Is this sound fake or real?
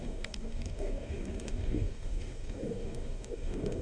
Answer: fake